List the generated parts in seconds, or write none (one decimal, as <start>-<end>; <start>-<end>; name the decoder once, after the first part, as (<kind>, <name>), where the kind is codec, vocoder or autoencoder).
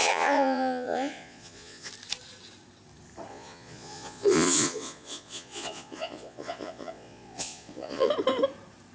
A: 0.0-1.9 (vocoder, Vocos); 3.3-8.1